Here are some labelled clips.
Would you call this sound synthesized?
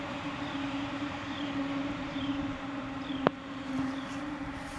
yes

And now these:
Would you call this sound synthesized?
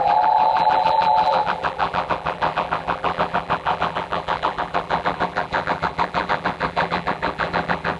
yes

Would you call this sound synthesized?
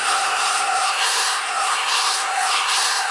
yes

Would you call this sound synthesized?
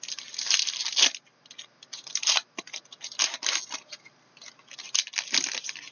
no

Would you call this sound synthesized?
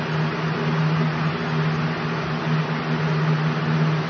no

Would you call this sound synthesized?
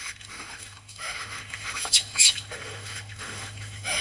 yes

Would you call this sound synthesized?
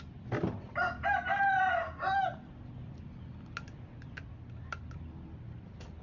no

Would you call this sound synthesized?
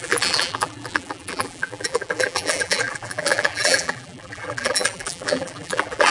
yes